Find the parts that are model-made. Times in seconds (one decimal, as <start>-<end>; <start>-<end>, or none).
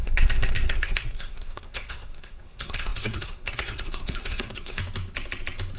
0.0-4.8